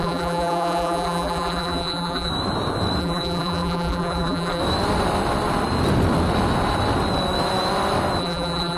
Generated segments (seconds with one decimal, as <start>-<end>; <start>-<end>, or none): 0.0-2.3; 3.0-4.6; 8.2-8.8